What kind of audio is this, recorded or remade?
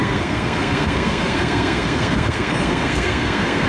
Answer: remade